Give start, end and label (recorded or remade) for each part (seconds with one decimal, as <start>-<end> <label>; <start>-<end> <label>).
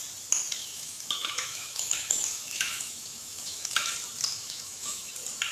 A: 0.0-0.6 recorded; 0.6-3.9 remade; 3.9-4.3 recorded; 4.3-5.1 remade; 5.1-5.5 recorded